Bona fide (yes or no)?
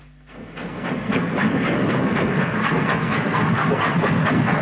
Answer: no